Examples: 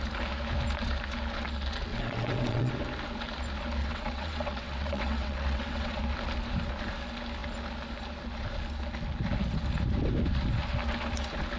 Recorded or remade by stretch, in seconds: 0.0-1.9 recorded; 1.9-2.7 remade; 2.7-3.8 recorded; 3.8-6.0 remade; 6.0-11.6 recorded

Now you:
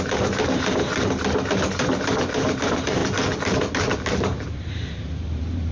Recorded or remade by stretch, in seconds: 0.0-0.9 remade; 0.9-1.4 recorded; 1.4-3.0 remade; 3.0-4.7 recorded; 4.7-5.7 remade

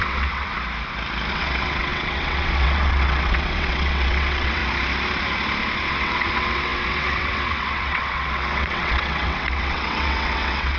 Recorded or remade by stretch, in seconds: 0.0-0.5 remade; 0.5-1.3 recorded; 1.3-4.6 remade; 4.6-5.9 recorded; 5.9-10.8 remade

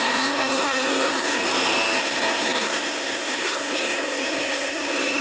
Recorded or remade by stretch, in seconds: 0.0-1.4 remade; 1.4-2.0 recorded; 2.0-5.2 remade

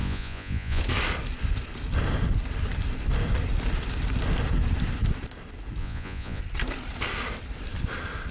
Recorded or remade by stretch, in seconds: 0.0-0.8 remade; 0.8-5.8 recorded; 5.8-6.4 remade; 6.4-8.3 recorded

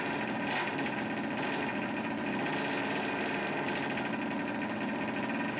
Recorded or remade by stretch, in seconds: 0.0-5.6 recorded

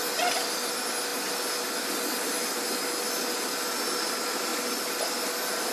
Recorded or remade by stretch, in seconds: 0.0-4.5 recorded; 4.5-5.2 remade; 5.2-5.7 recorded

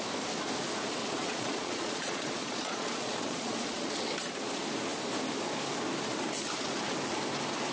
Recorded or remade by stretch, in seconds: 0.0-1.0 recorded; 1.0-3.9 remade; 3.9-7.7 recorded